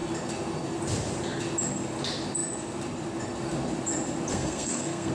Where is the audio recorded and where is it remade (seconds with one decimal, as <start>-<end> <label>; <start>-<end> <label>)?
0.0-4.3 recorded; 4.3-5.1 remade

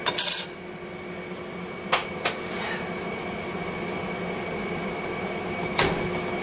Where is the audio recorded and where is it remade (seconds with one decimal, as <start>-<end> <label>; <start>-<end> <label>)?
0.0-6.4 recorded

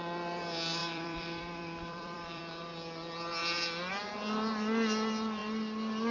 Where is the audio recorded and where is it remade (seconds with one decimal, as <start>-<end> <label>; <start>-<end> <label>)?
0.0-0.8 recorded; 0.8-2.4 remade; 2.4-6.1 recorded